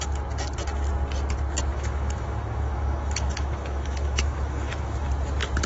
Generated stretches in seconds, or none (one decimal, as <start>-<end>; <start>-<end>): 1.7-5.1